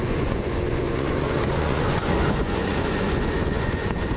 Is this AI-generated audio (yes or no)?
yes